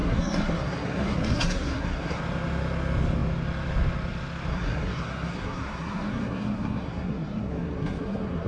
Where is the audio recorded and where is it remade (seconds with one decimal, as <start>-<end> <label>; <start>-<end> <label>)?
0.0-2.2 remade; 2.2-4.5 recorded; 4.5-8.5 remade